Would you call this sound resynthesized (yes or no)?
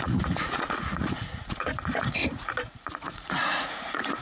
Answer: yes